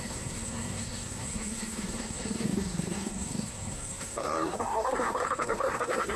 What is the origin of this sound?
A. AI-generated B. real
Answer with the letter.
A